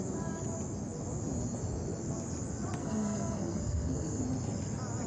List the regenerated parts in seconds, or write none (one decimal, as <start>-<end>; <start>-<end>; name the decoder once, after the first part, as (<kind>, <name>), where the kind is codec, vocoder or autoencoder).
2.8-4.2 (codec, SNAC)